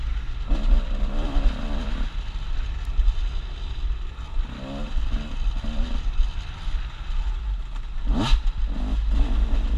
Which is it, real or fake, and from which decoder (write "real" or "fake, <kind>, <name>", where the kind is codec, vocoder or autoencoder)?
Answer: real